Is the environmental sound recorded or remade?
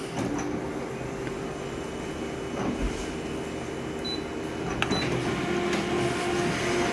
recorded